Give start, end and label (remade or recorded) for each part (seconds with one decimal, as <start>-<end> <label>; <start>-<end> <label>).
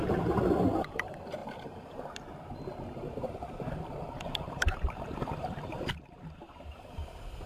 0.0-7.5 remade